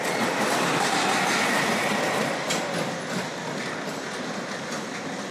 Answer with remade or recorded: recorded